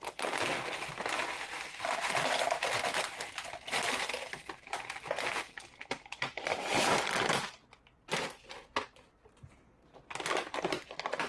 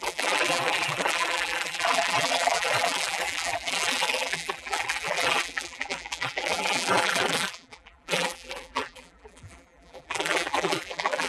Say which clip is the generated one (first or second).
second